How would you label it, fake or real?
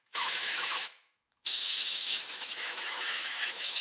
fake